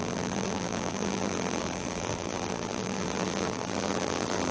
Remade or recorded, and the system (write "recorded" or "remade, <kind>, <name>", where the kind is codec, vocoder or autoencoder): remade, vocoder, BigVGAN v2